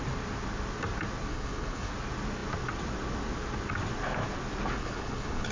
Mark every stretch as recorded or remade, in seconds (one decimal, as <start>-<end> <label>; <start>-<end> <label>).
0.0-1.3 recorded; 1.3-1.9 remade; 1.9-4.8 recorded; 4.8-5.5 remade